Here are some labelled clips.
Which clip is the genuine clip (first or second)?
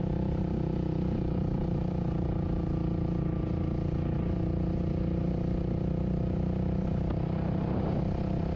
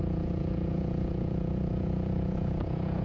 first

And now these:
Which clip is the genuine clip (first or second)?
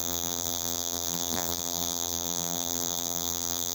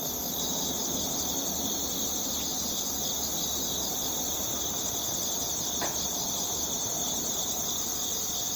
second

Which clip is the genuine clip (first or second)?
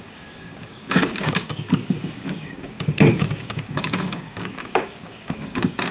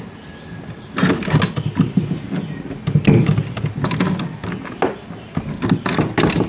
second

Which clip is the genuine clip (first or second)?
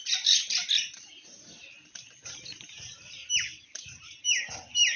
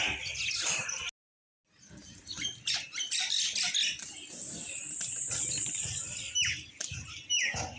second